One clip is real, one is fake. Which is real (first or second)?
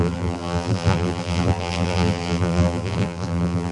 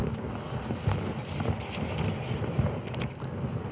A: second